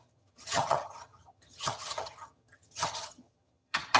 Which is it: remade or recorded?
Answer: remade